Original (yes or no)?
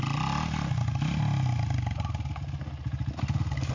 yes